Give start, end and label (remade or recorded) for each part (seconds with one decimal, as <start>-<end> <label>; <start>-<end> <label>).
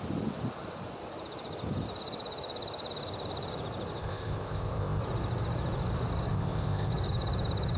0.0-4.0 recorded; 4.0-5.0 remade; 5.0-6.3 recorded; 6.3-6.9 remade; 6.9-7.8 recorded